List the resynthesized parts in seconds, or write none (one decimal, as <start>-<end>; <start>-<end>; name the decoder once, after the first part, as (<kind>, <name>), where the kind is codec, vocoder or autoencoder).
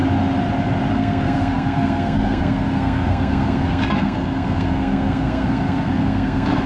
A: 0.9-6.7 (codec, SNAC)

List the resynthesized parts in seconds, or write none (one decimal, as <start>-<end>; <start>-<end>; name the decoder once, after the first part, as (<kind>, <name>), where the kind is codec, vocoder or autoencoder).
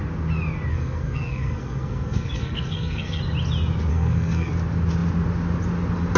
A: 0.7-3.2 (codec, SNAC); 3.9-4.5